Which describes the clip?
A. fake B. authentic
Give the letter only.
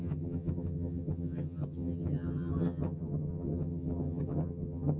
A